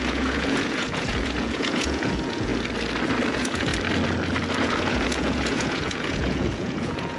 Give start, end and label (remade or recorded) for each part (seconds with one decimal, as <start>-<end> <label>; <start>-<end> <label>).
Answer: 0.0-2.5 remade; 2.5-3.3 recorded; 3.3-3.7 remade; 3.7-4.6 recorded; 4.6-7.2 remade